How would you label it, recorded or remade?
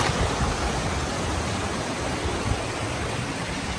recorded